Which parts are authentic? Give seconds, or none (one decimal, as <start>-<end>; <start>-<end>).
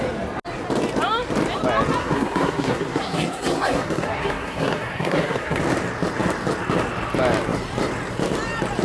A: 0.0-2.0; 5.6-8.8